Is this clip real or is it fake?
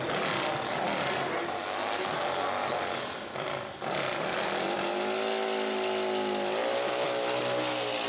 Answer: real